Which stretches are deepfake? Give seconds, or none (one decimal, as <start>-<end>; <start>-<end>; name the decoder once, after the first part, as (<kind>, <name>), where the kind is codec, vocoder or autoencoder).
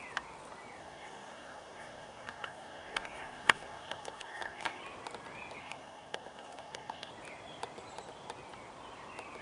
0.8-4.8 (codec, SNAC); 5.6-7.1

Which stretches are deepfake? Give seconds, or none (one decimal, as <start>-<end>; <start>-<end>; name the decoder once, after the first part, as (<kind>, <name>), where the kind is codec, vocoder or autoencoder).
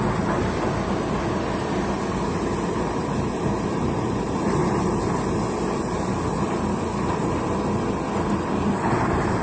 none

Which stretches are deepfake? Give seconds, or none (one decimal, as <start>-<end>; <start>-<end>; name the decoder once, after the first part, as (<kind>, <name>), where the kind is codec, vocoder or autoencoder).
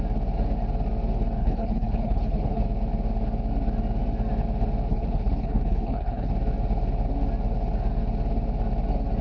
1.4-2.6 (codec, HILCodec); 4.9-6.3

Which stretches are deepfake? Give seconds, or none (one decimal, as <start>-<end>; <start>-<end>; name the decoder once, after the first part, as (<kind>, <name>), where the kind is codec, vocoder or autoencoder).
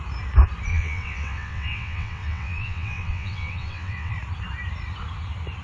0.7-4.1 (vocoder, WaveNeXt)